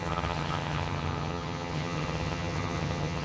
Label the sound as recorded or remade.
remade